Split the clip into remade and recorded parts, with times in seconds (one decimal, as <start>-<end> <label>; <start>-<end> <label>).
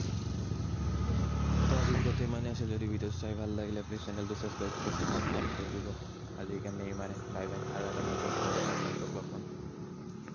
0.0-4.9 recorded; 4.9-5.5 remade; 5.5-10.3 recorded